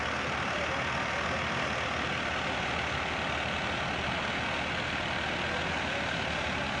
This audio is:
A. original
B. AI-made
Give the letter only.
A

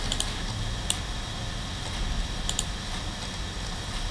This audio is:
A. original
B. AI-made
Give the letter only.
A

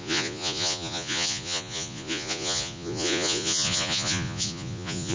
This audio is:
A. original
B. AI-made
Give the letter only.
B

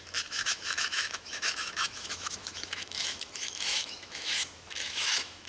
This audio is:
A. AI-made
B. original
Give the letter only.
A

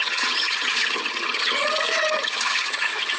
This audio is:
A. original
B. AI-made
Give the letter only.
B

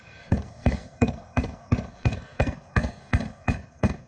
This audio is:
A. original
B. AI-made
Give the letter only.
B